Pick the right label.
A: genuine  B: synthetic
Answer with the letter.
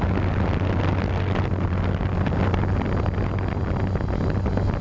A